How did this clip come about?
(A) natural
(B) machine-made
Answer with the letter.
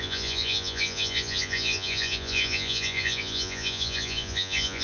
B